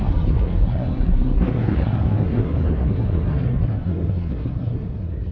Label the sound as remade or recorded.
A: remade